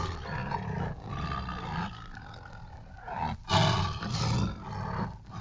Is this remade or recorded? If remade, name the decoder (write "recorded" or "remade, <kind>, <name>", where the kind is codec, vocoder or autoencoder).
recorded